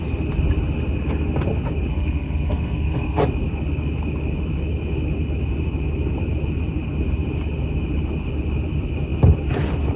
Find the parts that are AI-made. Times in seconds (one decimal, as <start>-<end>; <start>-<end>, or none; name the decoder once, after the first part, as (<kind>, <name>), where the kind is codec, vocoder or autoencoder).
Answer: 1.9-3.2 (codec, SNAC)